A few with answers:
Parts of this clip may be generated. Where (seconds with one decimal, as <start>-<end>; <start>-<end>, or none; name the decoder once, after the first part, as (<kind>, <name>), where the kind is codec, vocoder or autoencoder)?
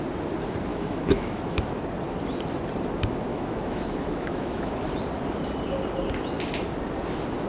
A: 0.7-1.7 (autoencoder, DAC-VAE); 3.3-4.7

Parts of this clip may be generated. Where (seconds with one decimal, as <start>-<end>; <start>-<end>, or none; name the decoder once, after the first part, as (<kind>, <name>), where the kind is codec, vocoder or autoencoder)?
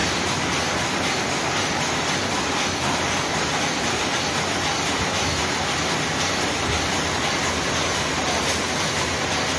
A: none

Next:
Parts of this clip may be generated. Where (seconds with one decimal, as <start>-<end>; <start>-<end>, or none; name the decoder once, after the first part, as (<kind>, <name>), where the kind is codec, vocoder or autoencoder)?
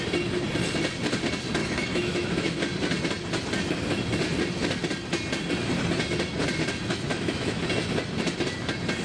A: 1.6-2.6 (autoencoder, DAC-VAE); 7.1-7.6